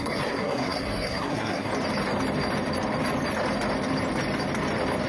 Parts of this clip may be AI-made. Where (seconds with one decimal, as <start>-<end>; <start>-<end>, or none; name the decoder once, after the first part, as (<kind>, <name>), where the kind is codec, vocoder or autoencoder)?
0.0-1.7 (codec, SNAC)